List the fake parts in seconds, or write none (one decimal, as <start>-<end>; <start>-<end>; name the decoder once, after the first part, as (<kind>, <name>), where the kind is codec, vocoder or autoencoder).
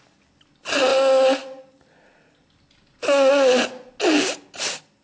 none